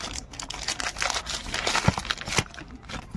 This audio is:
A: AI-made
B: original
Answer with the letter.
B